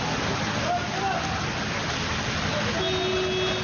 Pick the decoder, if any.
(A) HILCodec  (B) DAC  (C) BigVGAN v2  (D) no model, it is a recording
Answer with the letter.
D